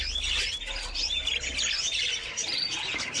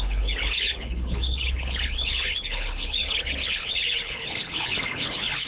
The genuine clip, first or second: first